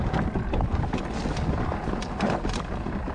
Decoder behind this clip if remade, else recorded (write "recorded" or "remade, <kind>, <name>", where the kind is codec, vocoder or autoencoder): recorded